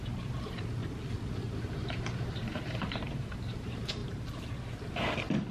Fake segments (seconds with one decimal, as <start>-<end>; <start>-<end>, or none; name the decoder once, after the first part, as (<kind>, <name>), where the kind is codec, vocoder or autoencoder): 0.0-0.8 (vocoder, BigVGAN v2); 1.4-4.0